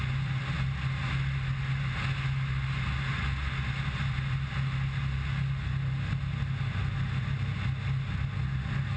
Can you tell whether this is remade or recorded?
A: recorded